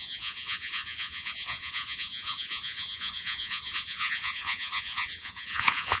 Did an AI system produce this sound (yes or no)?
yes